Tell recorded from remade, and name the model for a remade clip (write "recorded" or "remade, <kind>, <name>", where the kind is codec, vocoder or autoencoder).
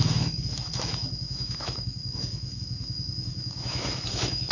remade, autoencoder, DAC-VAE